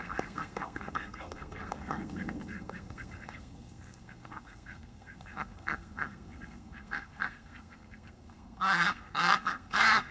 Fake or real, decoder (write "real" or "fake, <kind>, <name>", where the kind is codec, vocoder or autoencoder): fake, codec, SNAC